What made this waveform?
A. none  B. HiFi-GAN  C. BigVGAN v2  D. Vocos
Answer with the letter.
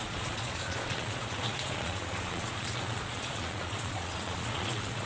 D